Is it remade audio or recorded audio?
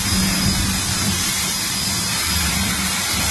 remade